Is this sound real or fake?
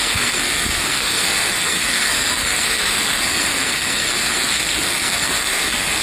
fake